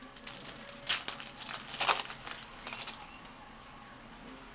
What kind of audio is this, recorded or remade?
recorded